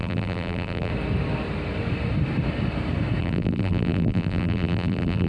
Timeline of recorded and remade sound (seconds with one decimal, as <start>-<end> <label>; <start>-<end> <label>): 0.0-0.9 remade; 0.9-3.2 recorded; 3.2-5.3 remade